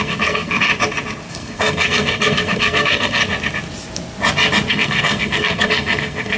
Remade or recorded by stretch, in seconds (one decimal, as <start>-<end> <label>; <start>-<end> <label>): 0.0-0.7 remade; 0.7-1.3 recorded; 1.3-3.2 remade; 3.2-4.7 recorded; 4.7-6.4 remade